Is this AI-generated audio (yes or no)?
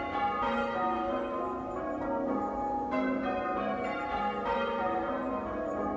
yes